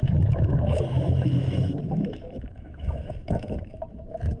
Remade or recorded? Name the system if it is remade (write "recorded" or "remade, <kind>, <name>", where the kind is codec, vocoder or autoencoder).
remade, autoencoder, DAC-VAE